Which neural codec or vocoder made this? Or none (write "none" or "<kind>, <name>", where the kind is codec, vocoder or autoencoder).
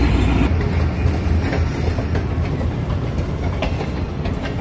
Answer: none